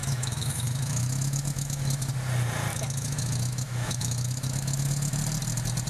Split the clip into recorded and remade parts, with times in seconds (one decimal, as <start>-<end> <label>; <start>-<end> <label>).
0.0-2.1 remade; 2.1-2.7 recorded; 2.7-5.2 remade; 5.2-5.9 recorded